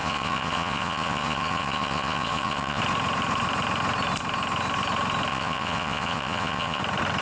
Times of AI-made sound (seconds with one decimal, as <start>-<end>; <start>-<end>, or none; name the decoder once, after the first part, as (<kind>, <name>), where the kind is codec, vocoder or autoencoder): 0.0-2.8 (vocoder, Vocos); 5.3-6.8